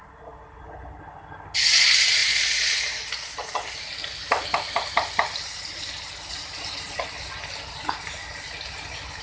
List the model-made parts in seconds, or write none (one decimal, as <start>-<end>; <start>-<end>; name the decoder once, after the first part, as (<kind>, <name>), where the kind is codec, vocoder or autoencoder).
none